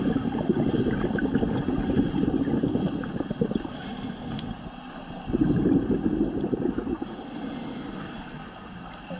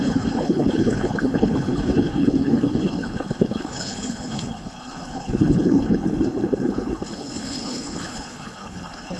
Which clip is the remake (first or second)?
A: second